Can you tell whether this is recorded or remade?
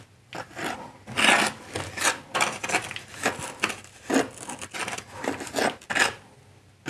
recorded